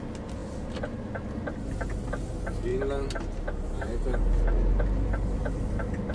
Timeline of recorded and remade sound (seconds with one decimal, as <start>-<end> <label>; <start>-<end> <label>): 0.0-6.1 recorded